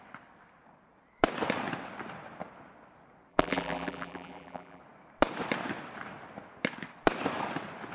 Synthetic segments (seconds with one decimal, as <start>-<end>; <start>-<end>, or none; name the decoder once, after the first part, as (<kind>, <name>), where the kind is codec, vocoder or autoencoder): 3.3-4.8 (vocoder, BigVGAN v2)